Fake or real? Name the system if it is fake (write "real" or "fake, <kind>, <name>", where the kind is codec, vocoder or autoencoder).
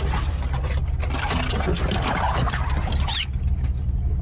real